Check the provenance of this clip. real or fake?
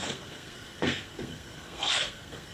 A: fake